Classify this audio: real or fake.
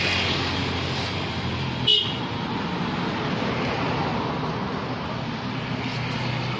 real